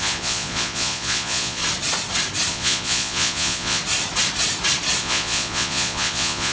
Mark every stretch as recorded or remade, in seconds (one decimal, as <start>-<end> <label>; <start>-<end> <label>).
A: 0.0-1.6 remade; 1.6-2.5 recorded; 2.5-3.8 remade; 3.8-5.0 recorded; 5.0-6.5 remade